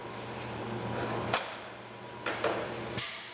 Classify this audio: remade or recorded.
remade